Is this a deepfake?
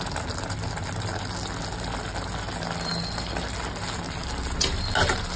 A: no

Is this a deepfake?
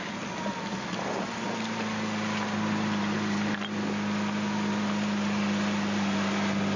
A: no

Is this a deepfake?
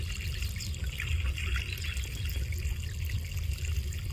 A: no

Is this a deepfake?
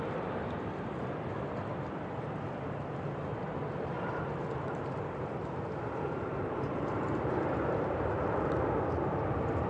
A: yes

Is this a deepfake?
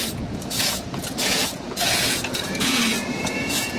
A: yes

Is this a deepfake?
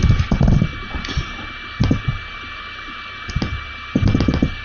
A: no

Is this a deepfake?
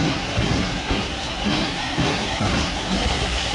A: yes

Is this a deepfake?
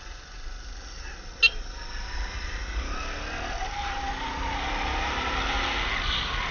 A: no